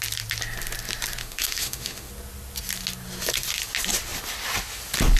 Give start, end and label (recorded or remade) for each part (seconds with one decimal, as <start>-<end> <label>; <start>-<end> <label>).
0.0-1.2 recorded; 1.2-2.1 remade; 2.1-5.2 recorded